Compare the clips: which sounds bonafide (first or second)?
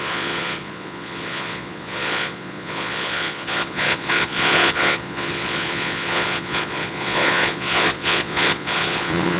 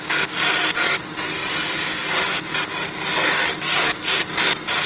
second